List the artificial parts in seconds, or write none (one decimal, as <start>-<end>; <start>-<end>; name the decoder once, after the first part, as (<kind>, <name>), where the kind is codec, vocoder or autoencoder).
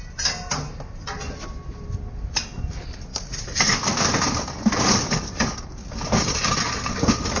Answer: none